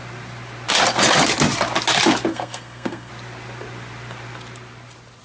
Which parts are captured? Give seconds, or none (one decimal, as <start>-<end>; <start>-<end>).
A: 0.0-2.3; 3.1-5.2